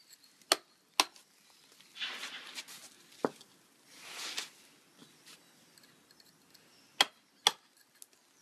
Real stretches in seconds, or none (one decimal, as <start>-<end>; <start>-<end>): 0.0-8.4